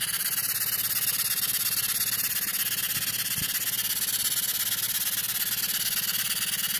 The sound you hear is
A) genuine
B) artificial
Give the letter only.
A